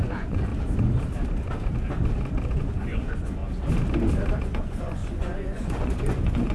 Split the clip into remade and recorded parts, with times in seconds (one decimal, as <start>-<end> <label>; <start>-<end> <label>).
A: 0.0-0.5 remade; 0.5-2.5 recorded; 2.5-3.4 remade; 3.4-4.4 recorded; 4.4-6.5 remade